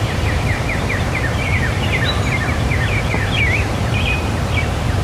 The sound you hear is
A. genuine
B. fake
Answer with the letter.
B